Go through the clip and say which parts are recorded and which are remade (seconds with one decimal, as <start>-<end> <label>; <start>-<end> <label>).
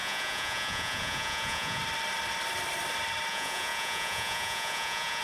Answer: 0.0-1.8 remade; 1.8-3.3 recorded; 3.3-5.2 remade